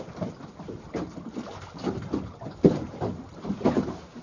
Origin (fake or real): real